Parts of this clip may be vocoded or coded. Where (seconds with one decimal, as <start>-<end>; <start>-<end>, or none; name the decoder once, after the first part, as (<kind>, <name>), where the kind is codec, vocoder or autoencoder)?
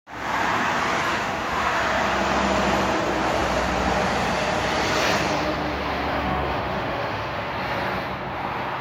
1.1-1.8 (autoencoder, DAC-VAE); 6.1-7.5